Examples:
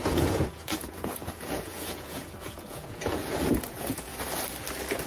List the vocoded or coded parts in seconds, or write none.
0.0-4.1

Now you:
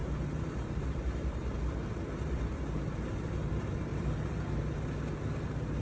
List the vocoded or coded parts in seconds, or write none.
0.0-3.5; 3.9-4.4

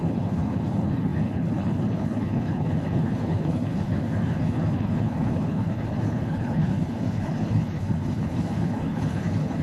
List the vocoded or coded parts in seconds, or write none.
0.0-9.6

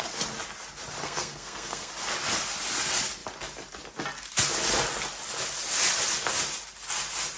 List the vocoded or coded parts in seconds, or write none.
1.0-1.9

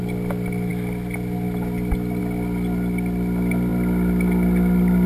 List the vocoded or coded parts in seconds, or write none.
none

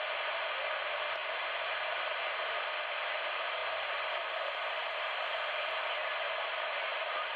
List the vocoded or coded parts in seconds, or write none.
none